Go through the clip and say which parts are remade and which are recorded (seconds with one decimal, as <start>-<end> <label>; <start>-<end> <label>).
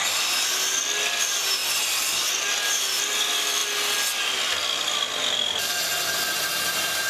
0.0-7.1 recorded